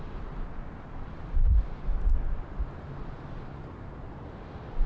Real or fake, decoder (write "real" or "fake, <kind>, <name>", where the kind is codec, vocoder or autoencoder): real